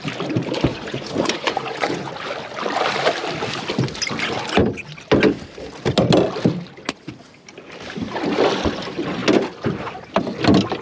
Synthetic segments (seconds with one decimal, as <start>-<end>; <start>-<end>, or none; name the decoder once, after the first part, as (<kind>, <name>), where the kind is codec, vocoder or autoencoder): 0.7-2.1 (vocoder, Vocos)